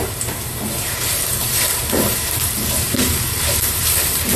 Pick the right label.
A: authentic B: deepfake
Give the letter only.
B